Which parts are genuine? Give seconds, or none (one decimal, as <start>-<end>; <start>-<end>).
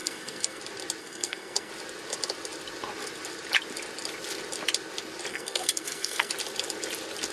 0.6-1.0; 1.7-5.3; 6.3-7.3